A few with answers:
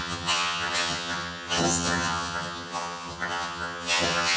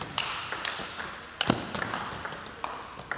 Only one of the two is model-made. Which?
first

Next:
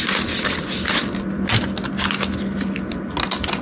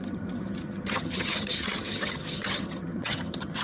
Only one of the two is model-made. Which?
second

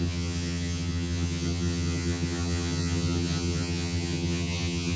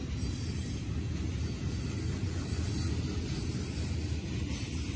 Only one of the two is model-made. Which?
first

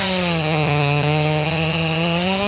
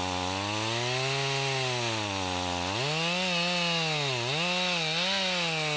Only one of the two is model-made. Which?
first